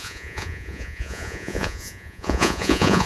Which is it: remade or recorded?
remade